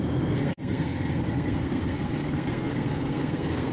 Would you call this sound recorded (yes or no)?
no